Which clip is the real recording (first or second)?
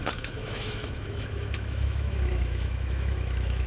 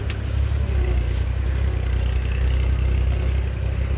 second